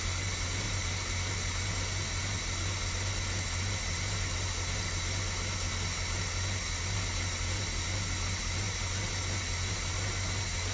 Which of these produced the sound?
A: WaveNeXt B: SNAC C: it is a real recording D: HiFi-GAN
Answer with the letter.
C